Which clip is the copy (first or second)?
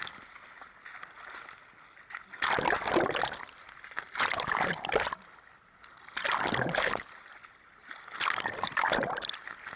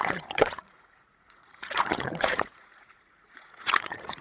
second